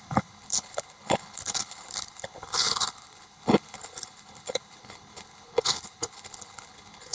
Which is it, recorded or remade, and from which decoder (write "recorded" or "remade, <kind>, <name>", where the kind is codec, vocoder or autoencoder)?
remade, codec, HILCodec